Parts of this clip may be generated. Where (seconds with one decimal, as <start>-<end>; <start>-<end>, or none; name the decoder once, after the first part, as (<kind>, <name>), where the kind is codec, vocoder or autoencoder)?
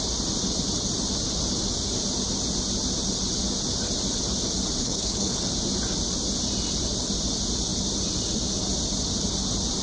4.8-5.4 (codec, HILCodec)